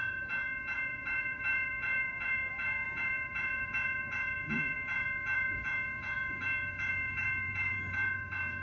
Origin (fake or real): fake